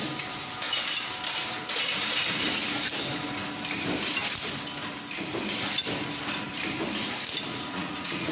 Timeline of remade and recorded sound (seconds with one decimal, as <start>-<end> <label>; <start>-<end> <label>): 0.0-7.5 recorded; 7.5-8.3 remade